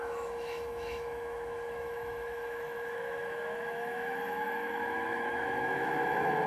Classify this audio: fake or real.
fake